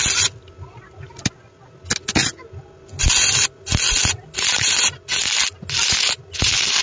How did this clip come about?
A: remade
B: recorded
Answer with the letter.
B